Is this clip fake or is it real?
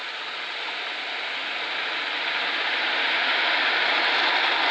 real